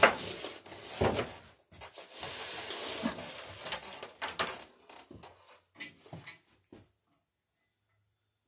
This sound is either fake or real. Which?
real